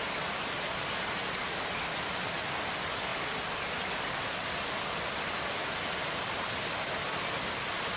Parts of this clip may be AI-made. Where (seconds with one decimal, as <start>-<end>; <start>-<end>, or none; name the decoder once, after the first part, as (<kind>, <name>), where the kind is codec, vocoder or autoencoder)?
none